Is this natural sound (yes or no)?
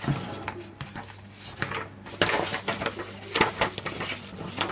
yes